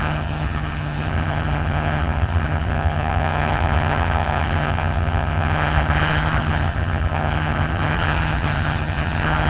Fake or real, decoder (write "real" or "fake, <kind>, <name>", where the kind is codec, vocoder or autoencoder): fake, vocoder, HiFi-GAN